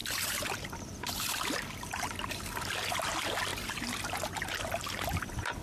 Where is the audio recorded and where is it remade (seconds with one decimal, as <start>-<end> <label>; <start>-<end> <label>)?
0.0-2.3 remade; 2.3-5.6 recorded